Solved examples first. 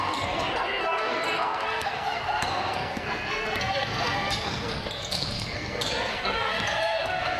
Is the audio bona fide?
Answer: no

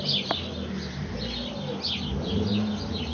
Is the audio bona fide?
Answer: yes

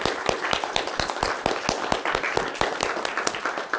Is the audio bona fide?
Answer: yes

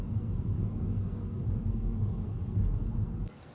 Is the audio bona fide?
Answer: no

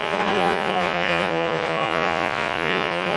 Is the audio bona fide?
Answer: no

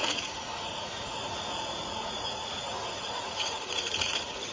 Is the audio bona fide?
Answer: no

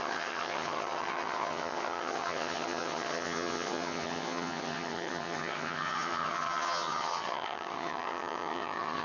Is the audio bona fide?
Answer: no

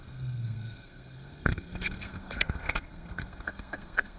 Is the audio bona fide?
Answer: no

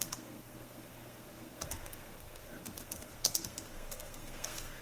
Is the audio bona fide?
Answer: no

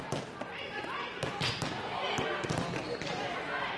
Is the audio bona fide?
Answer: yes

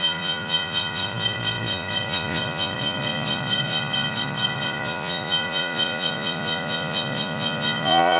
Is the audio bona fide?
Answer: no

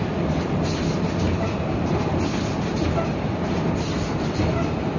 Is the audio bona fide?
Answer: no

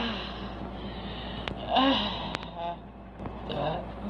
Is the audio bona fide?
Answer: yes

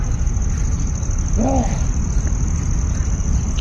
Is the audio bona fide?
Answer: yes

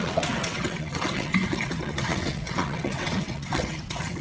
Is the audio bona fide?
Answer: no